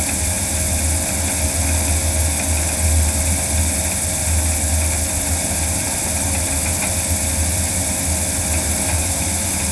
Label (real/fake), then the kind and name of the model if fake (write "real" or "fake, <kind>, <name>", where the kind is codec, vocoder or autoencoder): real